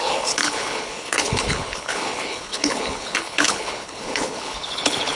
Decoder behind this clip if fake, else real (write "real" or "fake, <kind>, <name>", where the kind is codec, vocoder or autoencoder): fake, codec, HILCodec